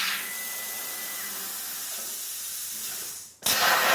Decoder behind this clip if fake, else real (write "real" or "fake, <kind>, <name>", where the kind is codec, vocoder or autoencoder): real